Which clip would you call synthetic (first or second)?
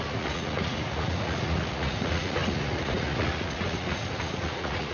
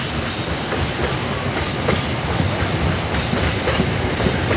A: first